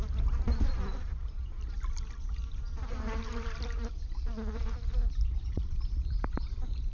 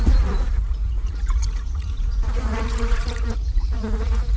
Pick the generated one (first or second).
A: second